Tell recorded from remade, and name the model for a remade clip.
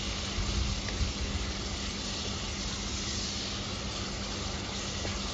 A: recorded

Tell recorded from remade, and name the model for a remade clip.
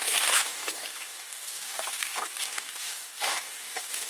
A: remade, codec, DAC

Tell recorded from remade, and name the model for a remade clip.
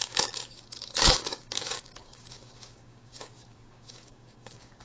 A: remade, codec, DAC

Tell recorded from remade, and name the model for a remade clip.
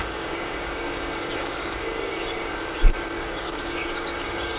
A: remade, codec, DAC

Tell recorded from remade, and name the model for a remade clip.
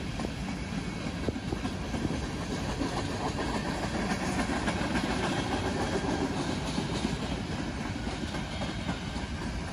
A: recorded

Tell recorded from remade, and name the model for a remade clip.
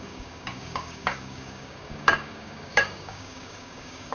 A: remade, codec, DAC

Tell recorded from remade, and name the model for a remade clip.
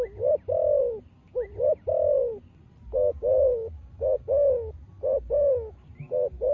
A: recorded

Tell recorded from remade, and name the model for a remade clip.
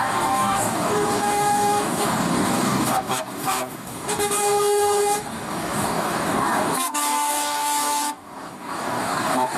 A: remade, codec, DAC